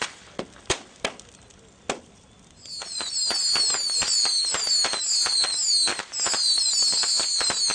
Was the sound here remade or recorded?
recorded